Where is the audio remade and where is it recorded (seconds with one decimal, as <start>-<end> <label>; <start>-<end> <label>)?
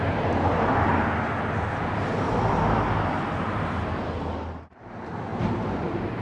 0.0-0.9 remade; 0.9-4.6 recorded; 4.6-6.2 remade